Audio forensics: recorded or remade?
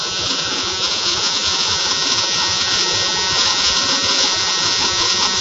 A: remade